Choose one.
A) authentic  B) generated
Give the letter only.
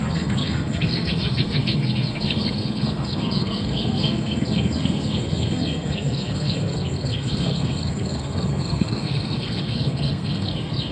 B